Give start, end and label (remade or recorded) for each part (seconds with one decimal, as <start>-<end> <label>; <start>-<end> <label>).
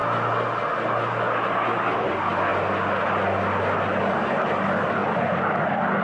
0.0-6.0 recorded